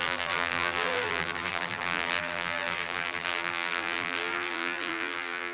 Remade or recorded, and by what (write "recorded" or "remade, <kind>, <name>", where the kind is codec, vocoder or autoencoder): remade, vocoder, BigVGAN v2